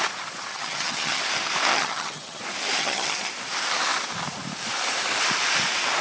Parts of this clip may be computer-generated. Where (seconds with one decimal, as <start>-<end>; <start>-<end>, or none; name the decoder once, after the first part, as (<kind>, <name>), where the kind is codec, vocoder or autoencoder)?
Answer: 0.5-1.2 (vocoder, HiFi-GAN); 1.7-2.4; 2.8-3.3